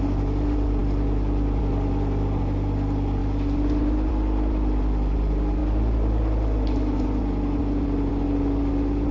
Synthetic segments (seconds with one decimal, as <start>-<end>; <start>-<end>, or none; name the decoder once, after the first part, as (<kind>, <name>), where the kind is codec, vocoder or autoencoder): none